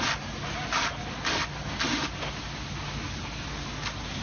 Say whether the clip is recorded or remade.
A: recorded